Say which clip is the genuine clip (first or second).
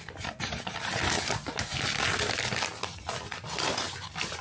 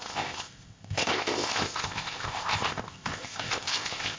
first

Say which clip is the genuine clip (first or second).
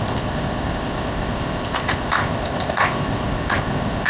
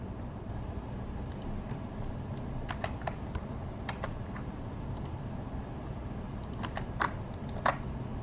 second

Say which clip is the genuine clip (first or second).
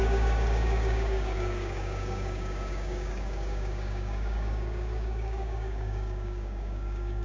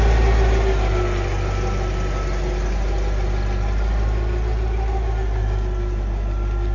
second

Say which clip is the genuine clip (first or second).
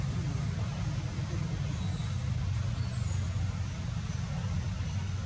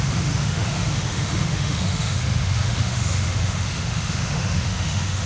first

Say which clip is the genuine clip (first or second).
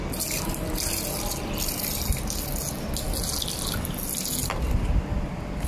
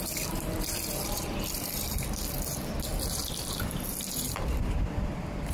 first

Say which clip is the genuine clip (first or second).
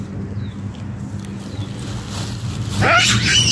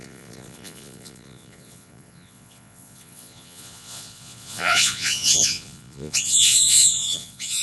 first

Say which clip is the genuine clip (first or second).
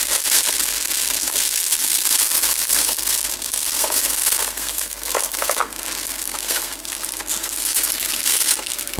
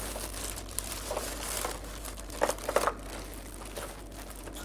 second